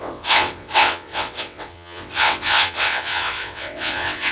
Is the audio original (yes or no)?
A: no